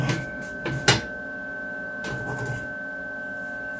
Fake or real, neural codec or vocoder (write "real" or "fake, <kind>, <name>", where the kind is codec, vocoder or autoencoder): real